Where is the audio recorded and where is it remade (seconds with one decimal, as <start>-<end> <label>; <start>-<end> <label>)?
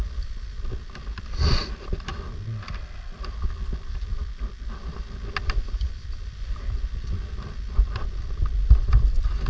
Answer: 0.0-9.5 recorded